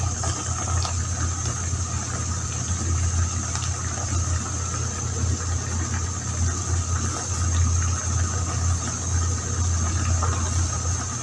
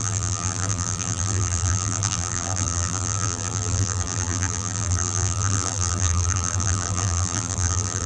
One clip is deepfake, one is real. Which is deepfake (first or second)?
second